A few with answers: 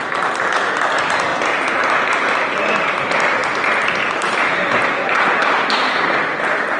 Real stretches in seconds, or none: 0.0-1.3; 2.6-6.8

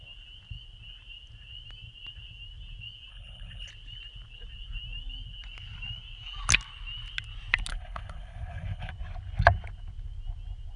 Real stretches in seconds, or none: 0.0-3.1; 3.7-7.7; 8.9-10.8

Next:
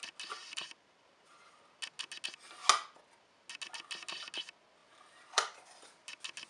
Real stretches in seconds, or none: 0.0-0.4; 1.0-4.8; 5.9-6.5